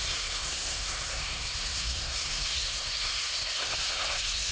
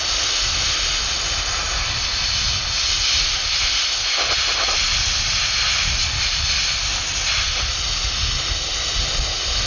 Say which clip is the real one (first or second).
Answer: second